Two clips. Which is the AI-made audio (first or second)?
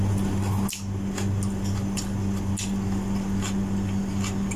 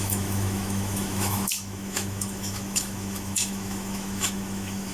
second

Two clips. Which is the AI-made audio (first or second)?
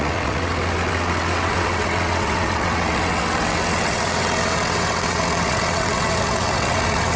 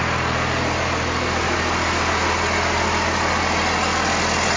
first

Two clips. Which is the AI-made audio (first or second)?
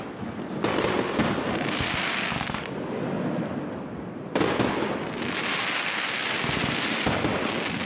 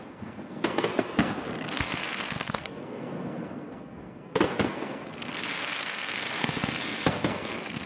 second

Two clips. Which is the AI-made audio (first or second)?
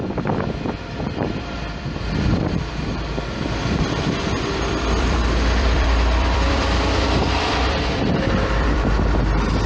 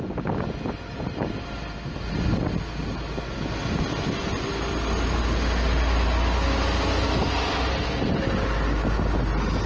first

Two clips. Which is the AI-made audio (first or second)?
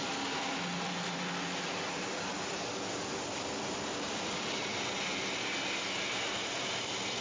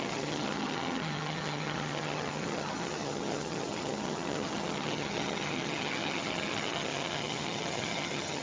second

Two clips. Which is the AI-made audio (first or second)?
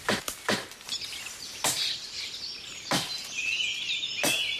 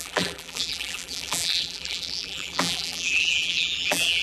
second